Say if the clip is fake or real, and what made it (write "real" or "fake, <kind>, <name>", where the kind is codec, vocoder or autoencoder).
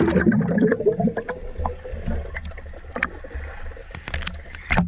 real